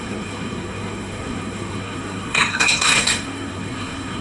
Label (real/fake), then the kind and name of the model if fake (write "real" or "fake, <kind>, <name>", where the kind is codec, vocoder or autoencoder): fake, codec, SNAC